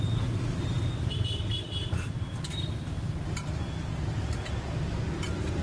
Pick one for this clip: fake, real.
fake